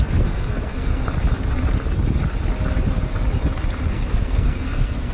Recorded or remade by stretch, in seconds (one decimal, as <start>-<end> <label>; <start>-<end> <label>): 0.0-1.1 remade; 1.1-3.9 recorded; 3.9-5.1 remade